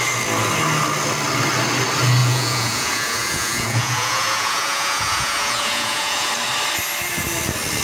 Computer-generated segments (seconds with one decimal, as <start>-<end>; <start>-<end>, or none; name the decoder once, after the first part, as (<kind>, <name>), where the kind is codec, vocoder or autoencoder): 2.2-6.3 (vocoder, Vocos)